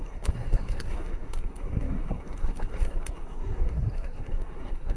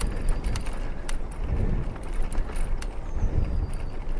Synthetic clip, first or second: first